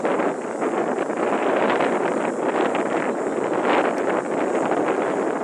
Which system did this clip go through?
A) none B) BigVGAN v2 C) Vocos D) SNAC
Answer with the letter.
A